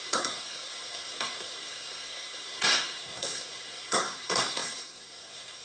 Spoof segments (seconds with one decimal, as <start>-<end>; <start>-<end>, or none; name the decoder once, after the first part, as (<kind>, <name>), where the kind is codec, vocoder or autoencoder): 0.0-5.6 (codec, SNAC)